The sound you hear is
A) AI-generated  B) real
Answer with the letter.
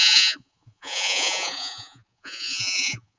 A